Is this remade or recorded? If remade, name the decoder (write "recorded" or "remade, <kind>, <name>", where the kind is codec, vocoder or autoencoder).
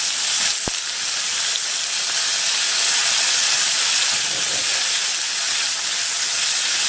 recorded